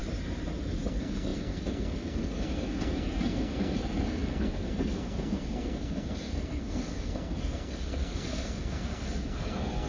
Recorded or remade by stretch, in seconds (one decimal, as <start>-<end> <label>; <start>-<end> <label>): 0.0-0.9 recorded; 0.9-9.9 remade